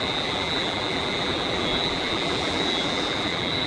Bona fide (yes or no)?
no